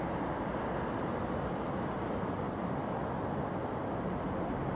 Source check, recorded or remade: recorded